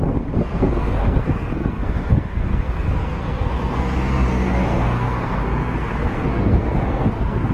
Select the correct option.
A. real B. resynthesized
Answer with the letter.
B